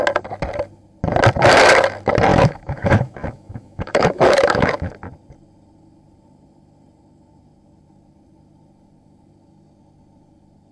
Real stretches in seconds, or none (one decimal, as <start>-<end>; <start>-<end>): 0.0-2.3; 4.9-10.7